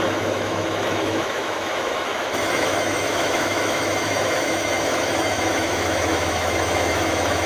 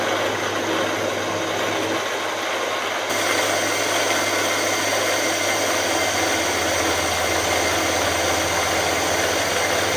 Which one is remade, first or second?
first